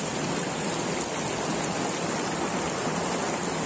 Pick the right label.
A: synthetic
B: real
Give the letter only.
B